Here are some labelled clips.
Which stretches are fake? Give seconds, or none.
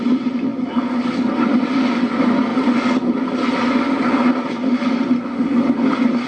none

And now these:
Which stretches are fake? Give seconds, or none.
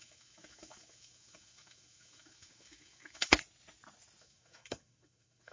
0.0-3.3 (autoencoder, DAC-VAE); 4.2-5.5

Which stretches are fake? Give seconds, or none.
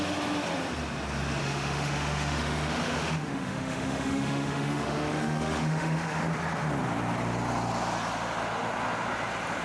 1.4-6.2 (autoencoder, DAC-VAE)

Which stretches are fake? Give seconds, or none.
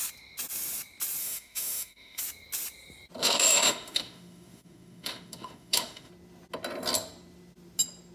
1.2-2.2 (autoencoder, DAC-VAE); 3.2-6.1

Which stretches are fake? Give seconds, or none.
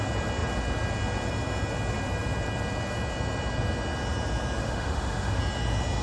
4.6-5.4 (autoencoder, DAC-VAE)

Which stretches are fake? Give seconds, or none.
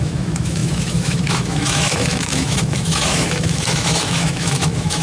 0.0-5.0 (autoencoder, DAC-VAE)